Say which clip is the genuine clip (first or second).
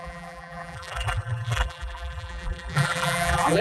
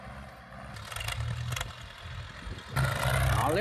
second